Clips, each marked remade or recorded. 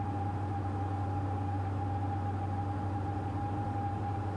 recorded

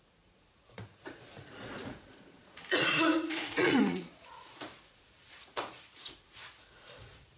remade